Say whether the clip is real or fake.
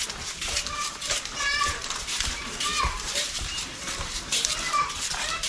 fake